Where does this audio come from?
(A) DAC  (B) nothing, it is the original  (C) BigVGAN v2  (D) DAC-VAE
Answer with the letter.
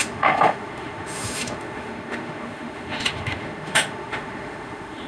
D